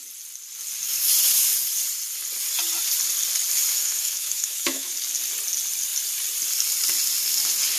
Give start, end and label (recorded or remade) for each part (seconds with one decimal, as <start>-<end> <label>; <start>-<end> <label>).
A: 0.0-3.7 recorded; 3.7-4.9 remade; 4.9-7.8 recorded